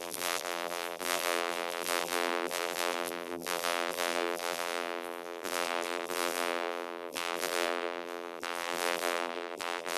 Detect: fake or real fake